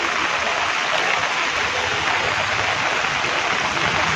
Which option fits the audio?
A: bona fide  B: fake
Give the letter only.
A